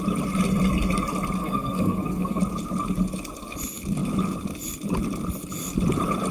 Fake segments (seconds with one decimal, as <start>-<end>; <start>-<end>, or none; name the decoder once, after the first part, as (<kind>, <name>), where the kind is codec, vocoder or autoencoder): 1.4-2.4 (codec, SNAC)

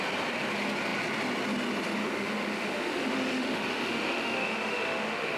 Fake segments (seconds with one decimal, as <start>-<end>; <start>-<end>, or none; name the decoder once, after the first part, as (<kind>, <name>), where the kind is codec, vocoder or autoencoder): 2.0-5.4 (autoencoder, DAC-VAE)

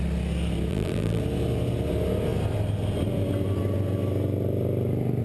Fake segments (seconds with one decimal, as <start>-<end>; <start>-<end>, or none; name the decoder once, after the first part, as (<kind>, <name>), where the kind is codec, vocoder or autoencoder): 0.7-1.2 (vocoder, BigVGAN v2)